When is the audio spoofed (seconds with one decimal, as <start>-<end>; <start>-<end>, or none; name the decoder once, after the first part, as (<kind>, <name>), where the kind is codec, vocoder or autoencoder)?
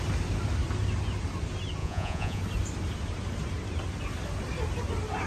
1.8-2.4 (vocoder, Vocos)